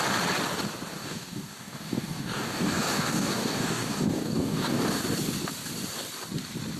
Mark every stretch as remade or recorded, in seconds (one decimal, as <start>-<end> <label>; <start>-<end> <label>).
0.0-0.9 recorded; 0.9-5.0 remade; 5.0-6.8 recorded